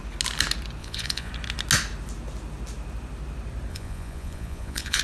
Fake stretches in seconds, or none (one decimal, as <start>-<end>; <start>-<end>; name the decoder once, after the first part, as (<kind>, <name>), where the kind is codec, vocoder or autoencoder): 0.8-1.3 (vocoder, Vocos); 3.7-5.0